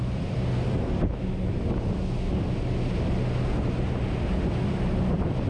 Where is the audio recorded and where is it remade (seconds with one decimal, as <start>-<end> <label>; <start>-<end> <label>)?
0.0-1.1 remade; 1.1-4.3 recorded; 4.3-5.5 remade

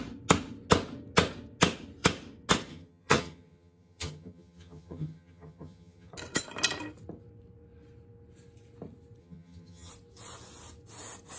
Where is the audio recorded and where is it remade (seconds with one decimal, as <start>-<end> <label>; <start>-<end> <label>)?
0.0-2.7 recorded; 2.7-6.1 remade; 6.1-9.2 recorded; 9.2-9.9 remade; 9.9-11.4 recorded

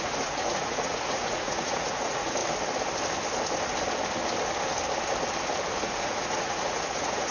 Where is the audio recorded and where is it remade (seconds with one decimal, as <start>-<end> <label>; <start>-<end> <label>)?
0.0-2.4 remade; 2.4-5.8 recorded; 5.8-7.3 remade

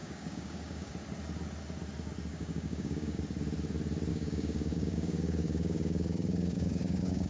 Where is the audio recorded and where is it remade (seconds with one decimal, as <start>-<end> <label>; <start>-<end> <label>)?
0.0-0.9 remade; 0.9-2.3 recorded; 2.3-3.2 remade; 3.2-4.1 recorded; 4.1-7.3 remade

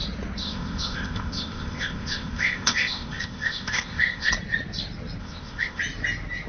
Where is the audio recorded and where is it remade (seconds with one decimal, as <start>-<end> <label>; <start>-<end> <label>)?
0.0-0.4 recorded; 0.4-4.3 remade; 4.3-5.2 recorded; 5.2-5.8 remade; 5.8-6.5 recorded

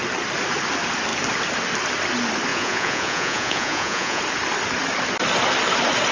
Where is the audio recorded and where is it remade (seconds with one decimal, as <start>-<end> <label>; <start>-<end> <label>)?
0.0-2.5 recorded; 2.5-4.2 remade; 4.2-6.1 recorded

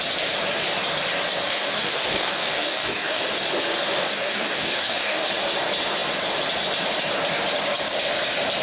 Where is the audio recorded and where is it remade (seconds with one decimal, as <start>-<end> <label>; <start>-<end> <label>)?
0.0-1.5 recorded; 1.5-3.2 remade; 3.2-3.9 recorded; 3.9-5.3 remade; 5.3-8.6 recorded

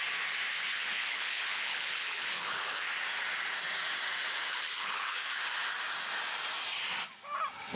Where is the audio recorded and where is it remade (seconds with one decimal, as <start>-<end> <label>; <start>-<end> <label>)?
0.0-0.7 recorded; 0.7-2.9 remade; 2.9-4.5 recorded; 4.5-5.4 remade; 5.4-7.8 recorded